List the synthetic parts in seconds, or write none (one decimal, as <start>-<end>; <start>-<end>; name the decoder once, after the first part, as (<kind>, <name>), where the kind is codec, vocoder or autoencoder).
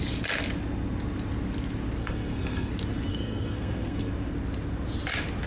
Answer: 2.0-2.7 (codec, SNAC); 3.1-4.1